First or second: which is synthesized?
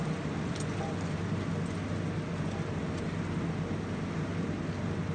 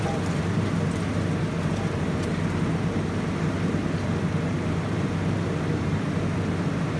second